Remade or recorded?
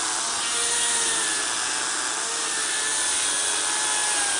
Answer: recorded